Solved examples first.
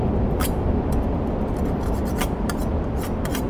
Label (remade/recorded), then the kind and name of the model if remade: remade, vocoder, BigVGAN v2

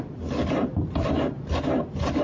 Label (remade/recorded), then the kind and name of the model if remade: recorded